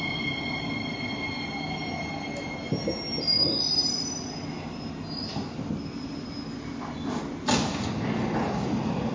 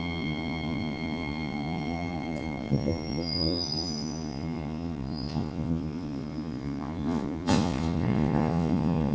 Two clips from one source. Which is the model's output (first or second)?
second